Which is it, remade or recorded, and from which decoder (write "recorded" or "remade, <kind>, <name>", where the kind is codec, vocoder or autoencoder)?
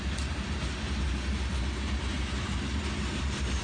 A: recorded